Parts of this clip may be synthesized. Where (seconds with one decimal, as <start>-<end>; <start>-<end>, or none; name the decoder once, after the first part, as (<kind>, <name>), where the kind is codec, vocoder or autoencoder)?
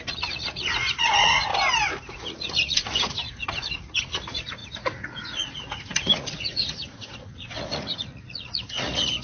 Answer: 0.0-1.5 (vocoder, Vocos); 2.1-9.2